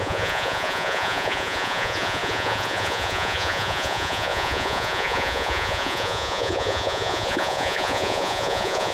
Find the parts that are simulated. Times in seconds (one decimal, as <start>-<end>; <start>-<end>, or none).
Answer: 0.0-8.9